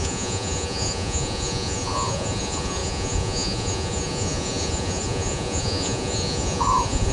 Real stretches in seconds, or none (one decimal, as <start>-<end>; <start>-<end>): none